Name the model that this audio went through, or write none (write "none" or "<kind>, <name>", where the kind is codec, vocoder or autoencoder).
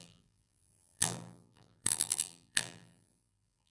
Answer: vocoder, BigVGAN v2